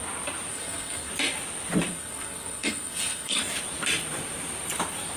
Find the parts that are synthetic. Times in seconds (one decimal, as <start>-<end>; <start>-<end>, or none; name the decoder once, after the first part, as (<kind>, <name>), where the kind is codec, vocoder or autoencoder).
0.5-1.1 (codec, SNAC); 1.9-3.4